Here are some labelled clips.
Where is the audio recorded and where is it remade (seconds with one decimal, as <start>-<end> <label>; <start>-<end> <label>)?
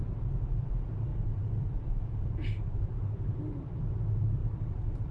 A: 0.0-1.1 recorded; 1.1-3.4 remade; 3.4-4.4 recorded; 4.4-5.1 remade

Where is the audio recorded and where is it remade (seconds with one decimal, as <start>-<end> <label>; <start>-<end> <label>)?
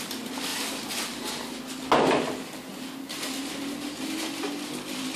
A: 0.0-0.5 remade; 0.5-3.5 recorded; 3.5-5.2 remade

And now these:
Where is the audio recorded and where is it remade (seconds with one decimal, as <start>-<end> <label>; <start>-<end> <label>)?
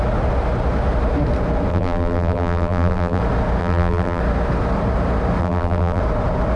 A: 0.0-1.7 recorded; 1.7-3.2 remade; 3.2-3.6 recorded; 3.6-4.2 remade; 4.2-5.4 recorded; 5.4-6.0 remade; 6.0-6.6 recorded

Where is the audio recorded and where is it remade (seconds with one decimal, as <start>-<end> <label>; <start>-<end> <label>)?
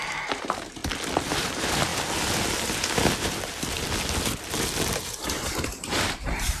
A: 0.0-0.8 remade; 0.8-1.4 recorded; 1.4-1.9 remade; 1.9-5.0 recorded; 5.0-6.6 remade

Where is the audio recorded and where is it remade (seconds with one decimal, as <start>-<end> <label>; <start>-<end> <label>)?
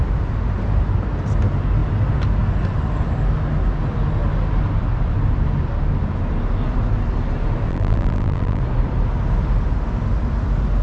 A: 0.0-7.7 recorded; 7.7-8.6 remade; 8.6-10.8 recorded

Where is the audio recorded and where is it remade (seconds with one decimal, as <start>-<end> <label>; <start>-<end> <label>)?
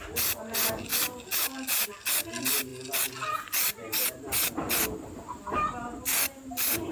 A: 0.0-6.9 recorded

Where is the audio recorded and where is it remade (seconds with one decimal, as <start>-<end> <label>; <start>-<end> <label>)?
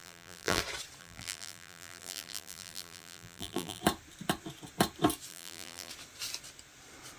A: 0.0-0.6 remade; 0.6-1.0 recorded; 1.0-3.8 remade; 3.8-5.3 recorded; 5.3-5.9 remade; 5.9-7.2 recorded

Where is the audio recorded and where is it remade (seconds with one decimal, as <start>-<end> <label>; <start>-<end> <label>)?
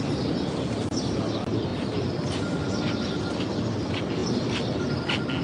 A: 0.0-5.4 recorded